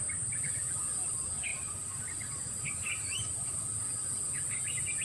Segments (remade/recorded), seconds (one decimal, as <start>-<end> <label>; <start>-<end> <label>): 0.0-5.0 recorded

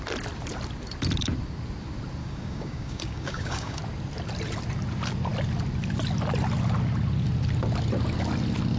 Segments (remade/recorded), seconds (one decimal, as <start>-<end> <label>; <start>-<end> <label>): 0.0-2.2 recorded; 2.2-3.8 remade; 3.8-8.8 recorded

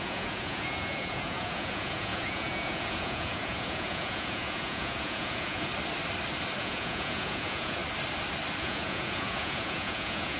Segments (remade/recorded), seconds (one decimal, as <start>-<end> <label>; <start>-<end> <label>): 0.0-5.7 remade; 5.7-6.6 recorded; 6.6-7.8 remade; 7.8-8.6 recorded; 8.6-10.4 remade